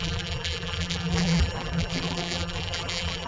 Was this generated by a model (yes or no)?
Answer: yes